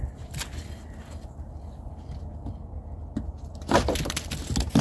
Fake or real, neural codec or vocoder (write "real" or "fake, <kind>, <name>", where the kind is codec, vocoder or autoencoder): real